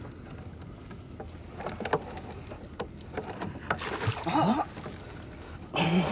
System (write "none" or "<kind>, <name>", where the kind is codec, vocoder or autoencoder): none